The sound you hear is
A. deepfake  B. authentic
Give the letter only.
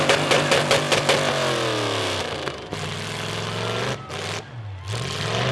B